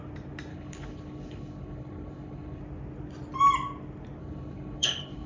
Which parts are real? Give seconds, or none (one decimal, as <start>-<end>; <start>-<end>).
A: 0.0-0.5; 2.6-4.2